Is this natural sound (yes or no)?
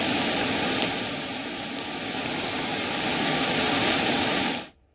yes